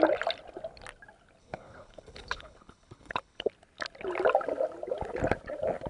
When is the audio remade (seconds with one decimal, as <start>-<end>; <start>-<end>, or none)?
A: 1.4-3.5